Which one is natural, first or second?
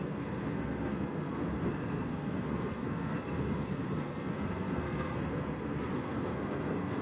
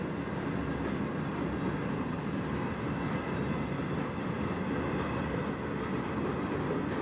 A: second